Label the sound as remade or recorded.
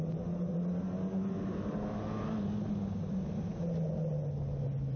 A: recorded